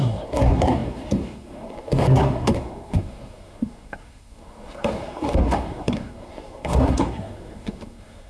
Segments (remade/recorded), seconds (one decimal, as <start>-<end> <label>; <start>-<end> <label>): 0.0-8.3 remade